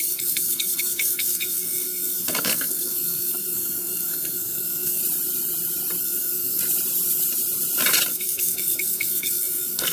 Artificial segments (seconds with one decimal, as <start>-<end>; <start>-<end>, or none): 0.0-5.0; 6.0-6.6; 8.1-9.9